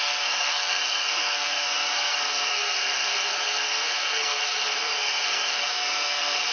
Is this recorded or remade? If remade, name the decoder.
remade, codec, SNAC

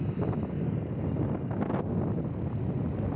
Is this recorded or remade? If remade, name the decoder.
recorded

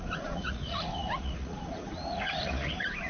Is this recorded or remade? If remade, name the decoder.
remade, vocoder, Vocos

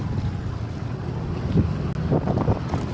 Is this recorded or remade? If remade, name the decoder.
recorded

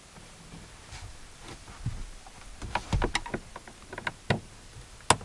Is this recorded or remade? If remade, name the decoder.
recorded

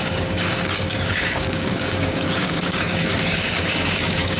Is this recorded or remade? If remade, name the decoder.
remade, codec, DAC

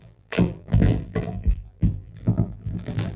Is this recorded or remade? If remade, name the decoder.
remade, vocoder, BigVGAN v2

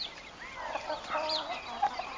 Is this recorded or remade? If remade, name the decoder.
recorded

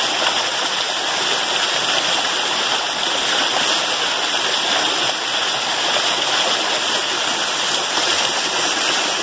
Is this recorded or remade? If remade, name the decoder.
recorded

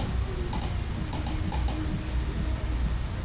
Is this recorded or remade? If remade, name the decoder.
recorded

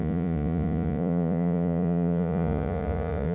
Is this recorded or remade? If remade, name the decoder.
remade, vocoder, Vocos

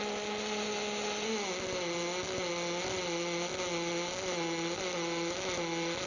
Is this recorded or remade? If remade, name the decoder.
recorded